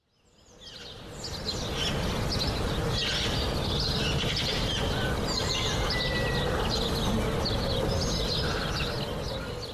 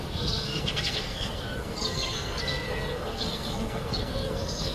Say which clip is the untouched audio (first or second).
first